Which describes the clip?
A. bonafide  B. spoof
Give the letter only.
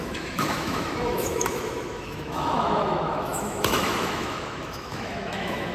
B